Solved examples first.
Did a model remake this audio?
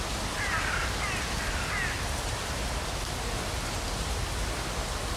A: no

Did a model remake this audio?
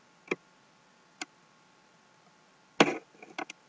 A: no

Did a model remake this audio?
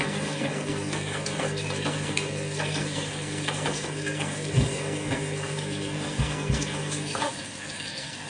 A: yes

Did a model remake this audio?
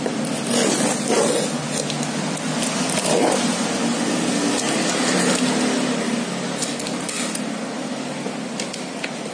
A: no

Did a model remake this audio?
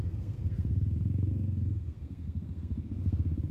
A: yes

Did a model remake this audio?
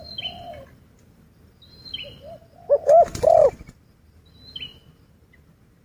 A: no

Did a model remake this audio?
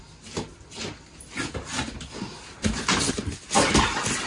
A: no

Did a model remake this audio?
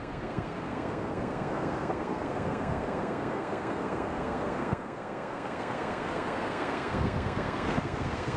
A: yes